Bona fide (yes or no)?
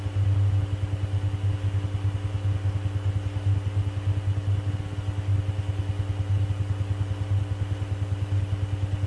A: yes